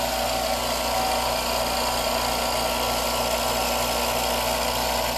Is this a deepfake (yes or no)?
no